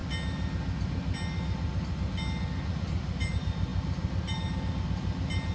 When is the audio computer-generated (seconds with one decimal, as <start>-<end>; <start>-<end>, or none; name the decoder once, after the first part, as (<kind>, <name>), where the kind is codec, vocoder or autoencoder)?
none